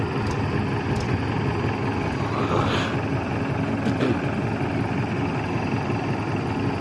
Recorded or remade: recorded